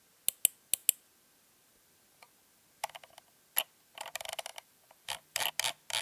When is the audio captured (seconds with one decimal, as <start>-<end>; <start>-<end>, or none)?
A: 0.0-4.5; 5.5-6.0